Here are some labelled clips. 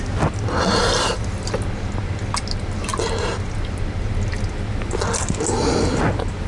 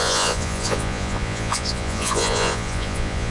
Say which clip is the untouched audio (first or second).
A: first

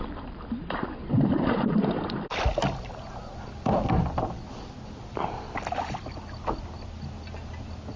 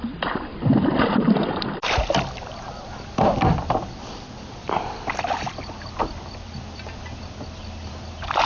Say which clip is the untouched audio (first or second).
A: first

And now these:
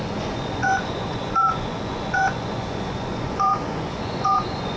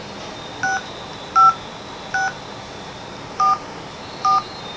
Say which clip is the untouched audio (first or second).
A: second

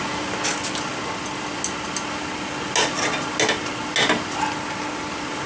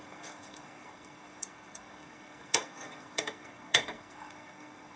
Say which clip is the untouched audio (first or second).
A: first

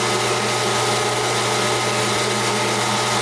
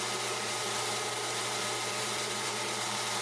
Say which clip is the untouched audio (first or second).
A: first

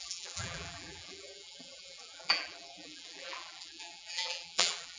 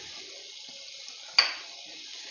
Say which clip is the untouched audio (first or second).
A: second